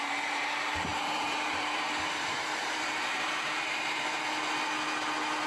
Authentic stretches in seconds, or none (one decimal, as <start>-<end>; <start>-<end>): 0.0-0.9; 4.2-5.5